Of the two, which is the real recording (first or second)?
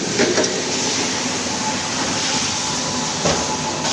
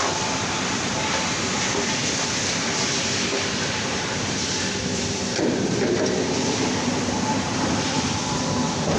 first